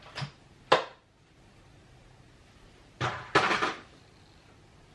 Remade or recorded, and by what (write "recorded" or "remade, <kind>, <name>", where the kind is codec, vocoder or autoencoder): recorded